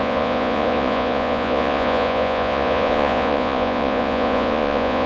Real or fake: fake